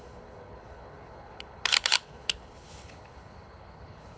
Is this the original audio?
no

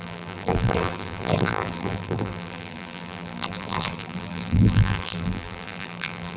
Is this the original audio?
no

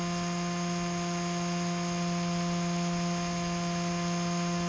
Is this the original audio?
yes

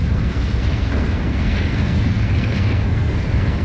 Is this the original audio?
no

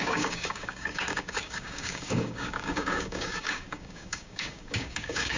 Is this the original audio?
no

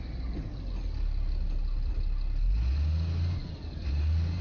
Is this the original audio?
yes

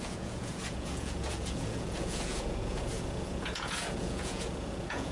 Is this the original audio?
no